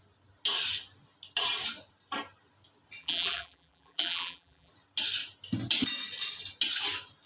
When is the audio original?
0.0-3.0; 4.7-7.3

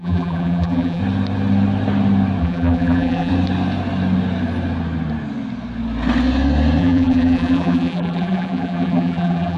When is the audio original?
1.0-2.4; 3.3-6.8